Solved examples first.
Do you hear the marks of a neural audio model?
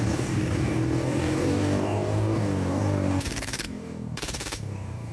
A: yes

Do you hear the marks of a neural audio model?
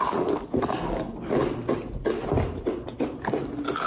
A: no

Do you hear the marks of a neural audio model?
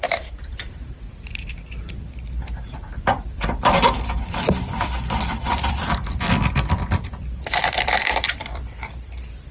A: yes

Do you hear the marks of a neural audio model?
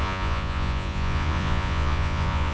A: yes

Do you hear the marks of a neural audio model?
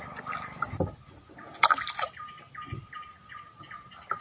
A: no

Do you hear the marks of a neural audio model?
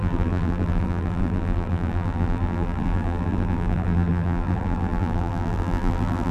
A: yes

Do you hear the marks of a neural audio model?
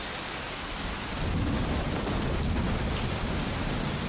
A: no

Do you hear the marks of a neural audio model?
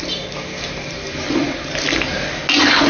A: no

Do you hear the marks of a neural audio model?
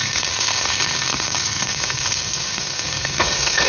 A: yes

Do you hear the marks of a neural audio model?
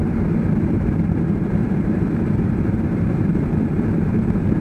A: yes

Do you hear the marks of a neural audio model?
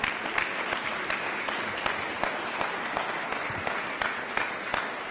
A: no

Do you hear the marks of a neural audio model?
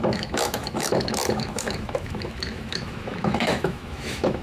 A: yes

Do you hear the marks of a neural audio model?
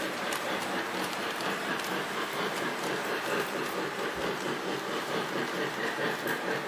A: yes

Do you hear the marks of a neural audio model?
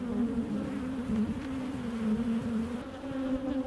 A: no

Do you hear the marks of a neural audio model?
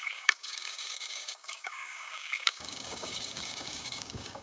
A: yes